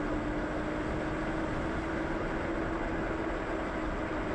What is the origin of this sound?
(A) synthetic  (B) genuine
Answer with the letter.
B